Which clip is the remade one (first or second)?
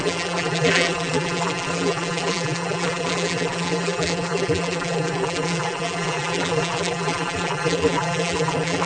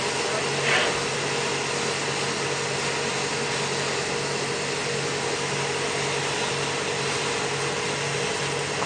first